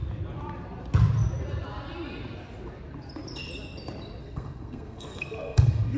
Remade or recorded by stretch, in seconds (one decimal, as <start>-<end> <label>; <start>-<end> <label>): 0.0-4.2 recorded; 4.2-6.0 remade